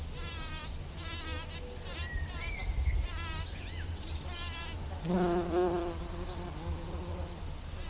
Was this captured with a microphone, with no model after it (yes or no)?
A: yes